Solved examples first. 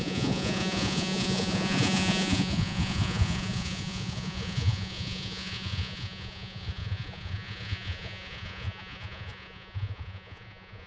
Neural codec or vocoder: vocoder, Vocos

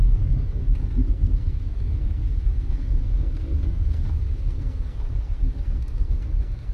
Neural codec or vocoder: codec, SNAC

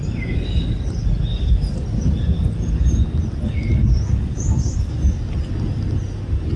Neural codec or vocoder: none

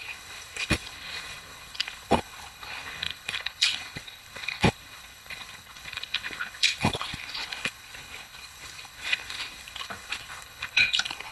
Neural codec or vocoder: codec, HILCodec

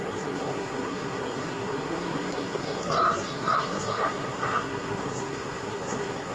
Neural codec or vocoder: codec, SNAC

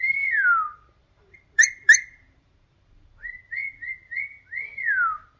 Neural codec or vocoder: none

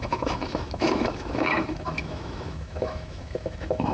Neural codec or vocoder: autoencoder, DAC-VAE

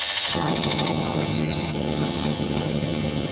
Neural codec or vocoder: vocoder, HiFi-GAN